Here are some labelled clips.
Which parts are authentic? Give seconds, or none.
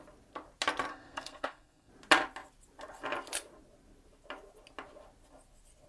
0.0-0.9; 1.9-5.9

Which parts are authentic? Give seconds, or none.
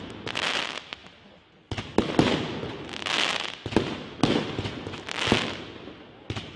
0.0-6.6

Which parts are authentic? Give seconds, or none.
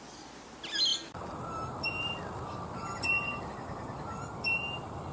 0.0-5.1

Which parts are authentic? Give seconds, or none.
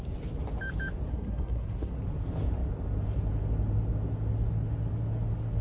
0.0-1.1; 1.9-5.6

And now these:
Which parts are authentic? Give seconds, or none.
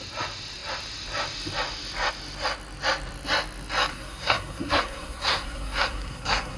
0.0-3.9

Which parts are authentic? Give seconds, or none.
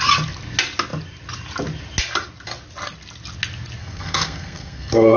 0.0-3.8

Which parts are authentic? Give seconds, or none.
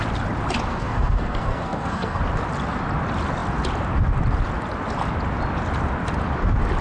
0.0-0.7; 2.2-6.8